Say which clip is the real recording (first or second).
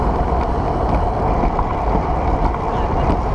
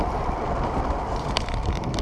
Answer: first